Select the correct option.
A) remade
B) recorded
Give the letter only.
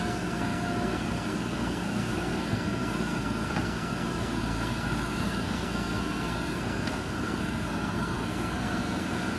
A